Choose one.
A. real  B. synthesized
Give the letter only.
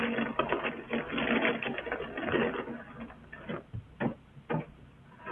A